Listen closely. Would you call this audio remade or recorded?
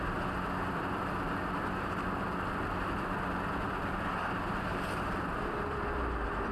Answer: recorded